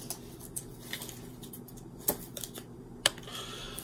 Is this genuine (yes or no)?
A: yes